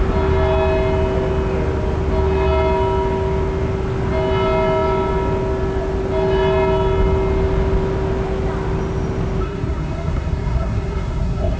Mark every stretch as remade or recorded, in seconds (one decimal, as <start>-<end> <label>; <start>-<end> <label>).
0.0-9.4 recorded; 9.4-11.6 remade